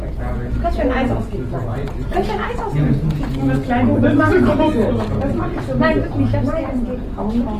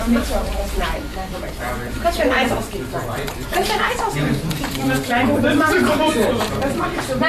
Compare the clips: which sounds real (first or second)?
first